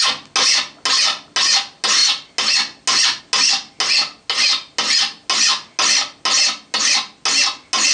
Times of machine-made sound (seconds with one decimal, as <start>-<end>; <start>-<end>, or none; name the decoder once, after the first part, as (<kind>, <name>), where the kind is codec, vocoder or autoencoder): none